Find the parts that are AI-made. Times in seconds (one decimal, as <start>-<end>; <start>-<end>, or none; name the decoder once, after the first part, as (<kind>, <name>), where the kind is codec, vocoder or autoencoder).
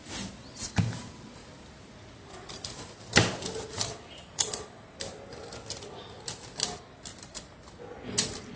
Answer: 1.4-4.4 (vocoder, BigVGAN v2); 7.1-7.8